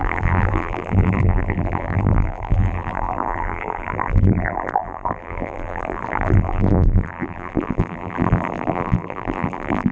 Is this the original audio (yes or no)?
no